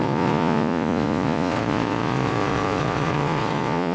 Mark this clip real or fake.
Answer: fake